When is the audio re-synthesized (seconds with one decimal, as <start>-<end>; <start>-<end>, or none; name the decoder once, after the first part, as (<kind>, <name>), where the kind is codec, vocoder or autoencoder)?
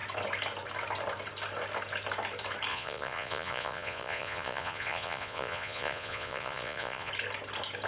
2.7-7.1 (vocoder, Vocos)